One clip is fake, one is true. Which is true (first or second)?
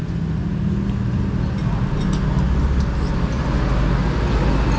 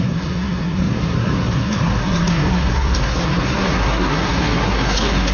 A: first